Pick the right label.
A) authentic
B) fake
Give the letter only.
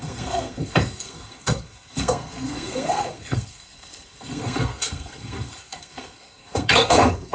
B